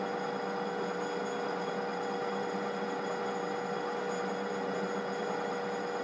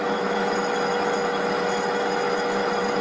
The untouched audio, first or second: first